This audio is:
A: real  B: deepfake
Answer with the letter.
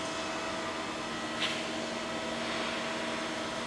A